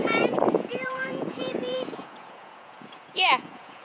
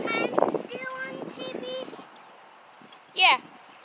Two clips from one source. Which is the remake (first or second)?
first